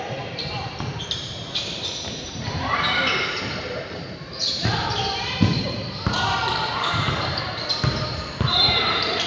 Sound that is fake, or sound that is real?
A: fake